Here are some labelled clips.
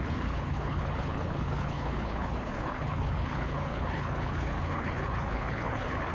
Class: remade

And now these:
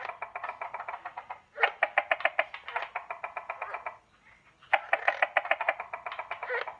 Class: recorded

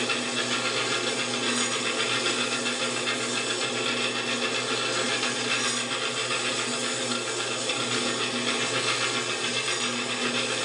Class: recorded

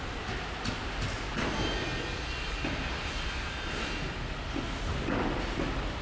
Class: recorded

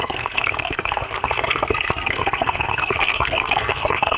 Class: remade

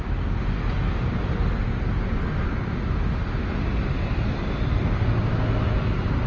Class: recorded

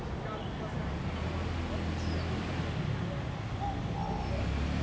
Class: recorded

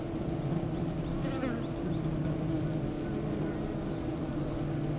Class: recorded